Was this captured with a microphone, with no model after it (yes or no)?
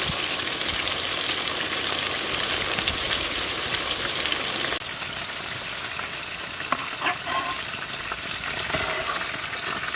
yes